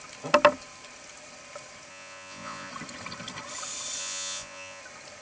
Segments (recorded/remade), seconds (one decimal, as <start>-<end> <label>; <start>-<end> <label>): 0.0-1.9 recorded; 1.9-2.7 remade; 2.7-4.0 recorded; 4.0-4.8 remade; 4.8-5.2 recorded